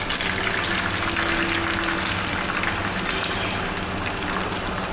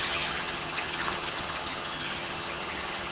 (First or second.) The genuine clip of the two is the first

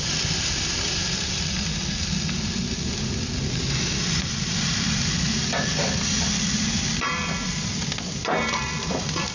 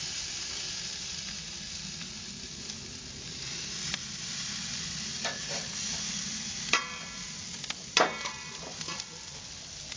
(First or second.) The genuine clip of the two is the second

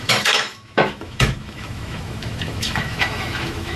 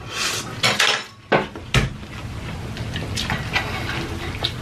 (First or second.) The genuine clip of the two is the second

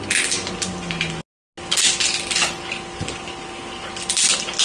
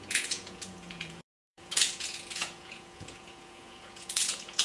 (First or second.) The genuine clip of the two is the first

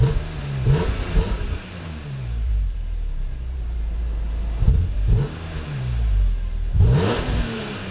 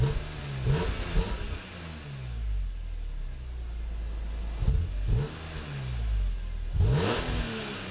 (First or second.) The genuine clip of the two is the second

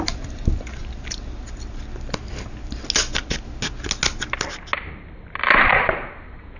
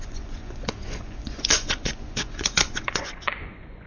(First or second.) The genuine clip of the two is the first